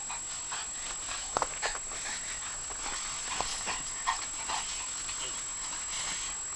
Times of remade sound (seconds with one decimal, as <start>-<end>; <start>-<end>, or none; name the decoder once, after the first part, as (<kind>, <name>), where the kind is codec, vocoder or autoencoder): none

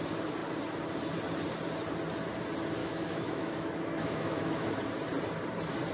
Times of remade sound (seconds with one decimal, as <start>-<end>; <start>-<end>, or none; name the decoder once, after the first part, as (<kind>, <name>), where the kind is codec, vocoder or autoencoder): 2.8-4.8 (autoencoder, DAC-VAE)

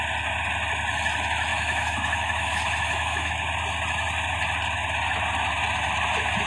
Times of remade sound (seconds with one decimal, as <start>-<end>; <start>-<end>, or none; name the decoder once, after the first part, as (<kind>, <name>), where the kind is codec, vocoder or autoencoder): 1.5-3.3 (autoencoder, DAC-VAE)

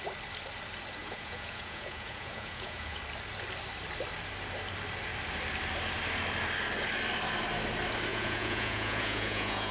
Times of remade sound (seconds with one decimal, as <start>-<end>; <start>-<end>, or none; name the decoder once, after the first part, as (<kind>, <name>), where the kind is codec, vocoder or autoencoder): 1.0-3.0 (vocoder, Vocos); 8.1-9.7

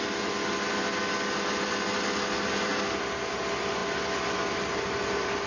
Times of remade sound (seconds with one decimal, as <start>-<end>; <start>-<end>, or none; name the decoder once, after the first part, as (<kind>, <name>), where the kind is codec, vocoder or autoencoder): none

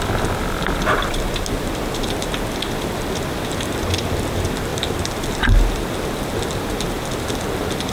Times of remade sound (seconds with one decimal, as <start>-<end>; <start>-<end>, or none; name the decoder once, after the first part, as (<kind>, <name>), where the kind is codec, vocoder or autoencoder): none

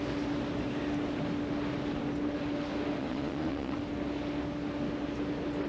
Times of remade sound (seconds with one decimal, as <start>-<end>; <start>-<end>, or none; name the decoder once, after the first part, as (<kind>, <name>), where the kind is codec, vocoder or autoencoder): 3.0-3.8 (vocoder, Vocos)

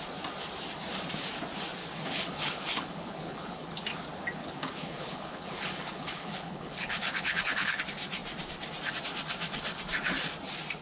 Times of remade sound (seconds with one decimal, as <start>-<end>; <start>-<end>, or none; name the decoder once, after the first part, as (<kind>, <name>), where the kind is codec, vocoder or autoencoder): 1.8-3.7 (codec, HILCodec); 4.4-7.8